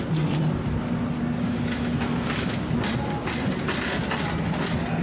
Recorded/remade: recorded